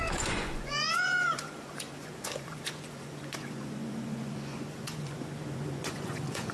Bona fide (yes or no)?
no